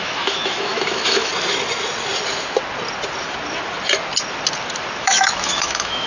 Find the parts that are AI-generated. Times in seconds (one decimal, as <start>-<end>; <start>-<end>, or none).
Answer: 0.0-1.3; 5.0-6.1